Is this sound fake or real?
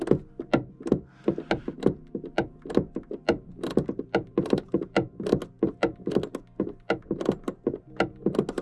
real